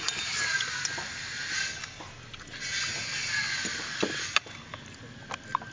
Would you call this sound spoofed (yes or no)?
no